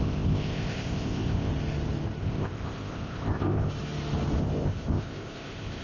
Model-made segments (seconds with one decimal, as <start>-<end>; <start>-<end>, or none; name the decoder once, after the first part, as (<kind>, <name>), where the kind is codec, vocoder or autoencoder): 0.0-1.5 (codec, ZipCodec); 2.2-3.7; 4.4-5.8